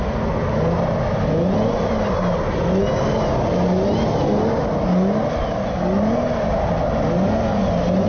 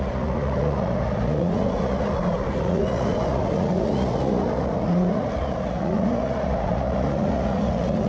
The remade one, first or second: second